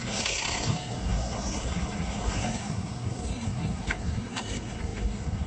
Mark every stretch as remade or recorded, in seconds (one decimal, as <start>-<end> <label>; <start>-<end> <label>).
0.0-5.5 remade